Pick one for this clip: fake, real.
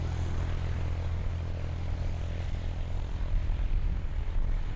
real